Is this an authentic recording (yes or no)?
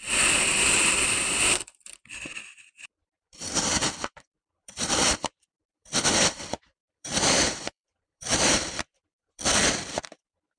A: no